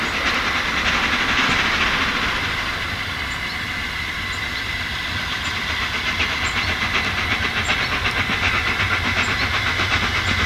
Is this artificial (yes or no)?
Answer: no